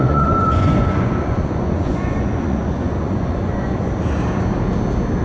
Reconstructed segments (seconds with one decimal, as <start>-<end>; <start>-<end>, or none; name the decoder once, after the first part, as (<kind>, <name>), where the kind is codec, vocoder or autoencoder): 0.0-3.9 (vocoder, Vocos)